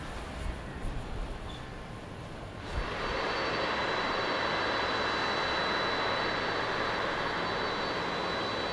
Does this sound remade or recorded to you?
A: recorded